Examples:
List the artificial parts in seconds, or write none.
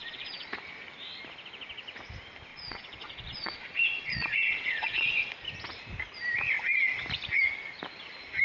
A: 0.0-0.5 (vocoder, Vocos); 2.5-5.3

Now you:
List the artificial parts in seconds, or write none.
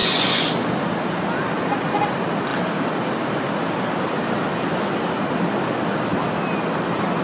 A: 0.0-0.5 (vocoder, Vocos)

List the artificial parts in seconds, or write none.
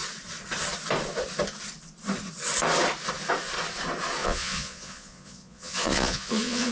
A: 4.2-6.7 (vocoder, Vocos)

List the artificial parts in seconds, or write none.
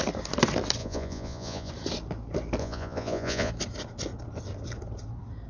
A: 0.8-1.7 (vocoder, Vocos); 2.6-3.5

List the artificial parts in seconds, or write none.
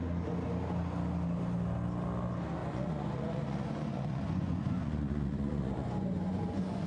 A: 2.6-6.9 (vocoder, Vocos)